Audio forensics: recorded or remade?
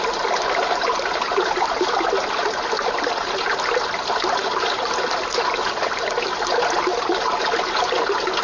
recorded